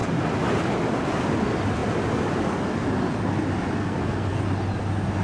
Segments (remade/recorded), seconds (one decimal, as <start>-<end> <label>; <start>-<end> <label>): 0.0-3.8 recorded; 3.8-4.4 remade; 4.4-5.2 recorded